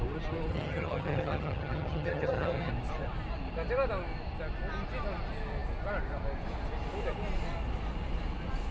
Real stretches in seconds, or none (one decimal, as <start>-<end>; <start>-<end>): 0.0-0.5; 2.7-8.7